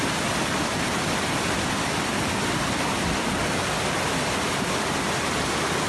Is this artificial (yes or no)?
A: no